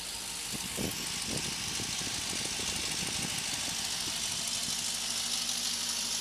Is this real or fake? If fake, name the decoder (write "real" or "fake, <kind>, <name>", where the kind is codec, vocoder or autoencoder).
real